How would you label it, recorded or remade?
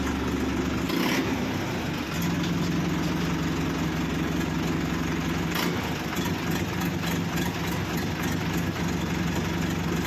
recorded